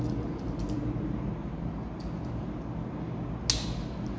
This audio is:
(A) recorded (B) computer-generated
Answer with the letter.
A